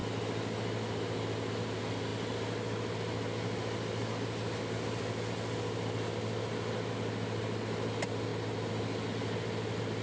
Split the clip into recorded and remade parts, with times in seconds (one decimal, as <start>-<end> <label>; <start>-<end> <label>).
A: 0.0-10.0 recorded